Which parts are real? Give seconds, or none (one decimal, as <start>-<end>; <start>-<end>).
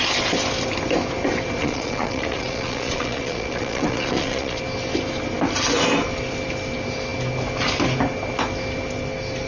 0.0-1.6; 4.6-9.5